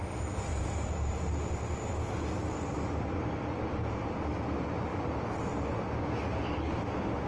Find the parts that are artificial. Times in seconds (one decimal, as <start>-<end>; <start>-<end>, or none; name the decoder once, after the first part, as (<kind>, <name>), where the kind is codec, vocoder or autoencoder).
0.5-1.2 (vocoder, BigVGAN v2)